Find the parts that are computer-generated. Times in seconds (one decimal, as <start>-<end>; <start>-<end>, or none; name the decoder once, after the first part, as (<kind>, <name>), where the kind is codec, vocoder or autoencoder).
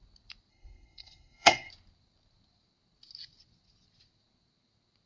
0.5-1.7 (codec, SNAC)